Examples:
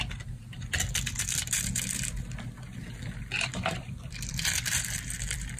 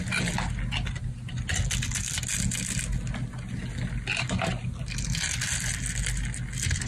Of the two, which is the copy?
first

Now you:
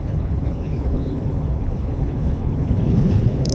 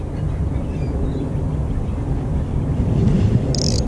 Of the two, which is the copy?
first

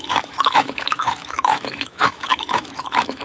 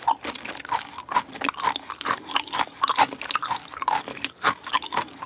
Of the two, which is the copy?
first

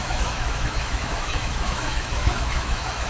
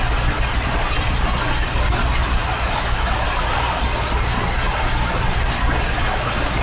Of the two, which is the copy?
first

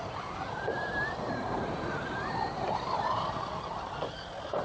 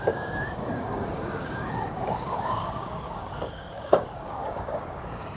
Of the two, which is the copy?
second